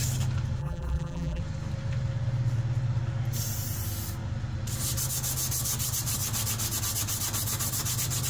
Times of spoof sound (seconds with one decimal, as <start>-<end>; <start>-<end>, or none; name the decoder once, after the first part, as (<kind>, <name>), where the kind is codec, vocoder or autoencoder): 0.6-1.4 (vocoder, BigVGAN v2)